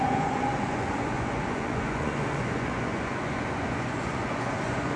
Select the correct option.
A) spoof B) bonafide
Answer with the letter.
A